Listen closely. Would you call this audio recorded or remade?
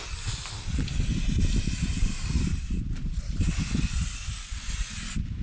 recorded